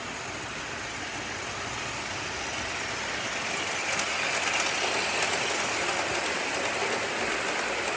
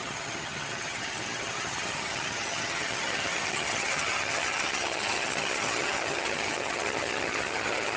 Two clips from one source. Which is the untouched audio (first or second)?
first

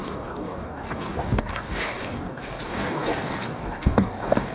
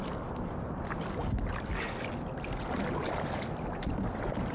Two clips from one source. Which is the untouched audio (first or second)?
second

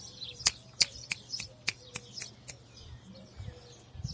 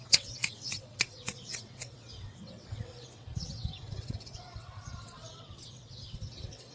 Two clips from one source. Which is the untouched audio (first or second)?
first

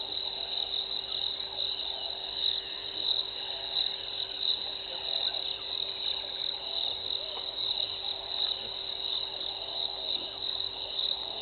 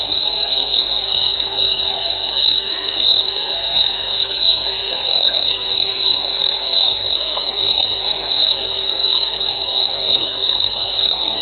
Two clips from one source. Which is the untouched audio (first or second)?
first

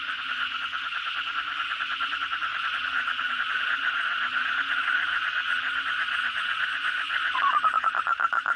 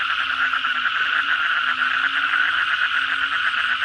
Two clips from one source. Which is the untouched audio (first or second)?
second